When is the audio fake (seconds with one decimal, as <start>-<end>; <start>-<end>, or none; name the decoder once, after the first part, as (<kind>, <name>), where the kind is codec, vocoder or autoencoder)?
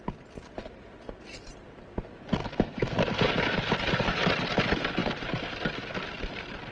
2.4-2.9 (autoencoder, DAC-VAE)